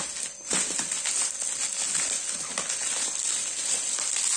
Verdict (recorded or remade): recorded